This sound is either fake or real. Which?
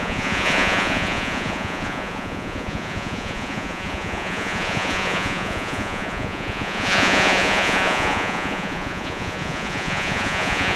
fake